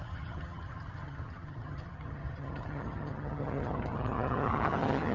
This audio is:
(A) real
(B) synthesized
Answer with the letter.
B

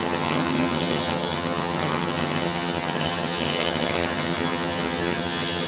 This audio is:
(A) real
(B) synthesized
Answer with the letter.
B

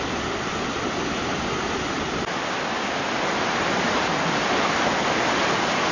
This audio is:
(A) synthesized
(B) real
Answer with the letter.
B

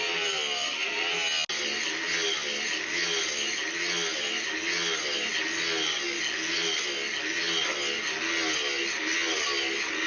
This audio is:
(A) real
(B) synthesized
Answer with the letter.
A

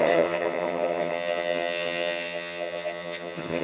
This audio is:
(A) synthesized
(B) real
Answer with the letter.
A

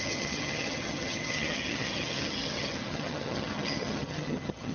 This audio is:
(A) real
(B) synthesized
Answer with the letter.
B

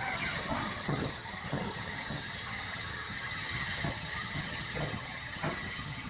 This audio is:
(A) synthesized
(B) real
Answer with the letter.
A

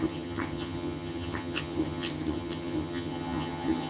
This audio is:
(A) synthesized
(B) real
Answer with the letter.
A